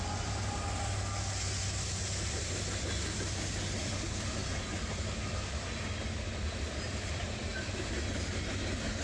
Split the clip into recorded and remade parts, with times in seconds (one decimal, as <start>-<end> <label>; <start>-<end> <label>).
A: 0.0-9.0 recorded

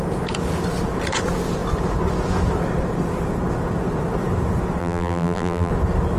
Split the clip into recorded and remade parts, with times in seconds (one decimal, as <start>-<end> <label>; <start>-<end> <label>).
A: 0.0-4.8 recorded; 4.8-5.7 remade; 5.7-6.2 recorded

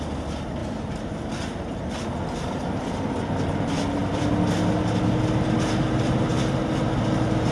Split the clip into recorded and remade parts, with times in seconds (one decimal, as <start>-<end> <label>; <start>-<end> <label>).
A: 0.0-4.0 recorded; 4.0-4.8 remade; 4.8-7.5 recorded

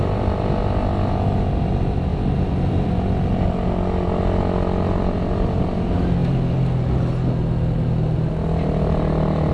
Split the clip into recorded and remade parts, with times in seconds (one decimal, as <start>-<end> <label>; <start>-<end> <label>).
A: 0.0-9.5 recorded